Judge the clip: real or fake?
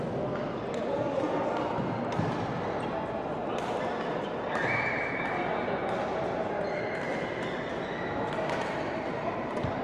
real